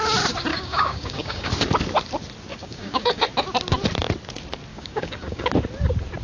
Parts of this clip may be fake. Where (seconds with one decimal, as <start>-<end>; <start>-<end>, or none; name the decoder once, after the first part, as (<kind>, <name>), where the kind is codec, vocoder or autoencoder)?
0.5-1.5 (codec, DAC); 2.5-3.2; 4.7-5.5